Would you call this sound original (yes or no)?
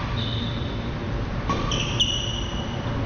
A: yes